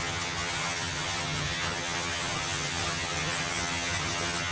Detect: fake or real fake